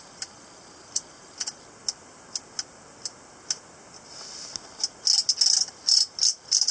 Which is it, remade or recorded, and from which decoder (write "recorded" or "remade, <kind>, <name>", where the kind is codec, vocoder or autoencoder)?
recorded